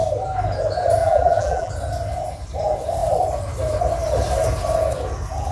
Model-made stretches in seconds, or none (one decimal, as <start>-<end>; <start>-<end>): 1.0-1.7